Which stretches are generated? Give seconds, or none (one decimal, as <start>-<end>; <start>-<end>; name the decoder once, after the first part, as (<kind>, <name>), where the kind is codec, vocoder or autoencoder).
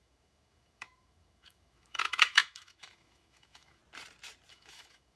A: 0.0-3.8 (autoencoder, DAC-VAE); 4.5-5.2